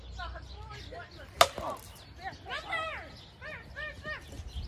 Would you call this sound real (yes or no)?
yes